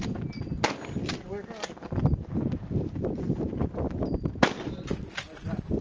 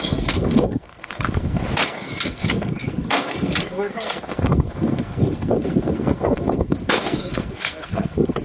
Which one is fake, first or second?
second